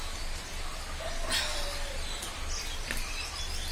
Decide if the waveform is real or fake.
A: real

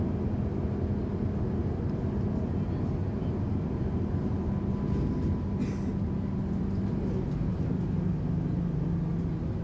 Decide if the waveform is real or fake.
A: real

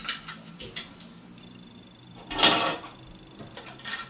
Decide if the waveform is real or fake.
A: fake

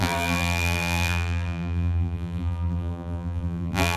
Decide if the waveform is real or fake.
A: fake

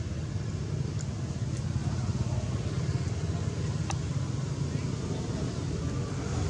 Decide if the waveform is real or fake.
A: real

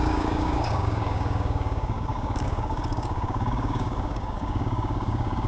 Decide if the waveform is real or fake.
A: fake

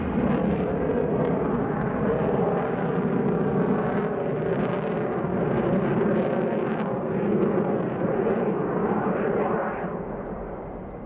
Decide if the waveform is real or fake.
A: real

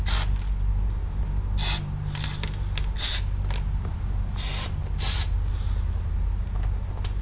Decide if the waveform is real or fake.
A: real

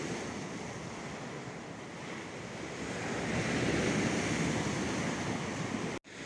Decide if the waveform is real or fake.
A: real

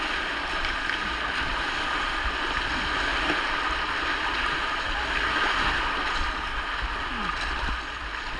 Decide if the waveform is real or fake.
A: real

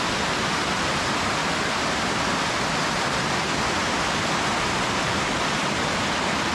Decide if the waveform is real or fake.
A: real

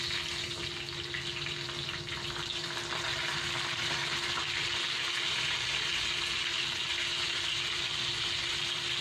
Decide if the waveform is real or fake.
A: real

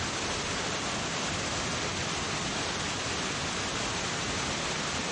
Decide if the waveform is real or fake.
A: fake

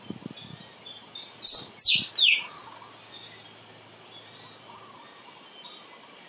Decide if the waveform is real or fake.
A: real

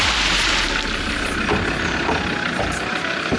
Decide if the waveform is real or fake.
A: real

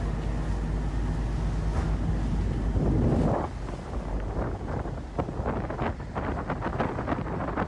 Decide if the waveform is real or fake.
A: real